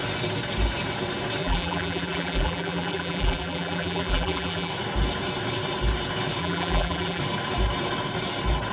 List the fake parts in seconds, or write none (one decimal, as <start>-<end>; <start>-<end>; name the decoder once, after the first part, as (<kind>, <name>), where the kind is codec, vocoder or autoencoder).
1.4-4.7 (vocoder, BigVGAN v2); 6.4-7.2